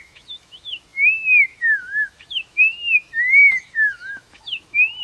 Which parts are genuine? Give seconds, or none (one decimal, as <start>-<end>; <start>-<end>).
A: none